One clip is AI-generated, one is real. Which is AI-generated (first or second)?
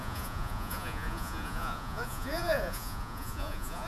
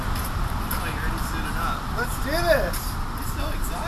first